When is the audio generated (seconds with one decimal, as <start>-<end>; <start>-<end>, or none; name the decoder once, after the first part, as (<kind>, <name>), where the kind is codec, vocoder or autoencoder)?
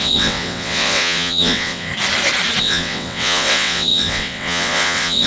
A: 0.0-1.9 (vocoder, WaveNeXt); 2.6-5.3